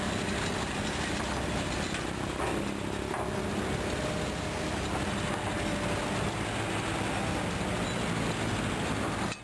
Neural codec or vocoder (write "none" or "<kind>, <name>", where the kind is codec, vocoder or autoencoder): none